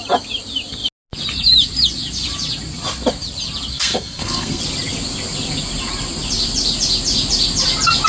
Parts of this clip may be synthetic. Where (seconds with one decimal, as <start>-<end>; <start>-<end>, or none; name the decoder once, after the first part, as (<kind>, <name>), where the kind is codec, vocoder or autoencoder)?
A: 3.7-4.6 (codec, SNAC)